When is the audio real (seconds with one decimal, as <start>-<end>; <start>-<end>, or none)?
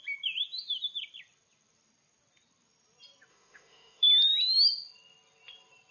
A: 0.0-3.3; 4.1-5.9